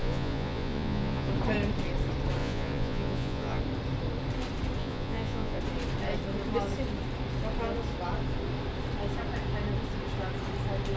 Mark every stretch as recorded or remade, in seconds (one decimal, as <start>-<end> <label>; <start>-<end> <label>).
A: 0.0-1.3 remade; 1.3-2.4 recorded; 2.4-3.6 remade; 3.6-4.8 recorded; 4.8-5.6 remade; 5.6-11.0 recorded